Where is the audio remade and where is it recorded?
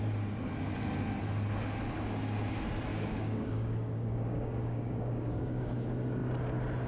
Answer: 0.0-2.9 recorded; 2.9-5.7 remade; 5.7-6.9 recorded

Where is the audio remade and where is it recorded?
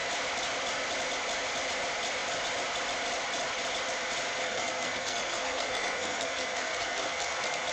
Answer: 0.0-4.4 recorded; 4.4-7.7 remade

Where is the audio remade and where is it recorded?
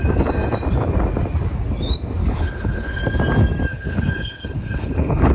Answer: 0.0-2.2 recorded; 2.2-3.0 remade; 3.0-3.7 recorded; 3.7-5.3 remade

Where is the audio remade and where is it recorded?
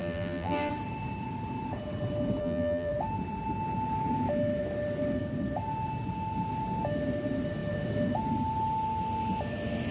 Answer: 0.0-0.7 remade; 0.7-2.4 recorded; 2.4-2.9 remade; 2.9-9.9 recorded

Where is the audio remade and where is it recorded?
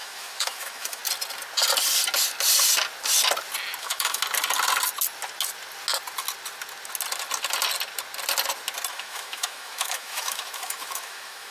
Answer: 0.0-1.0 remade; 1.0-3.8 recorded; 3.8-4.2 remade; 4.2-8.9 recorded; 8.9-11.5 remade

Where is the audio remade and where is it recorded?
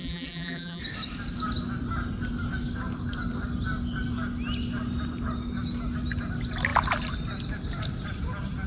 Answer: 0.0-0.8 remade; 0.8-8.7 recorded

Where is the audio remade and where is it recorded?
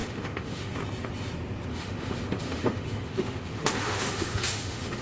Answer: 0.0-0.7 remade; 0.7-1.7 recorded; 1.7-5.0 remade